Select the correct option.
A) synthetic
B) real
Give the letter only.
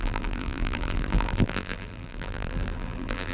A